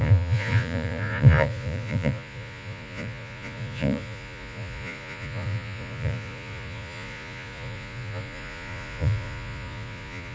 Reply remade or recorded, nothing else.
remade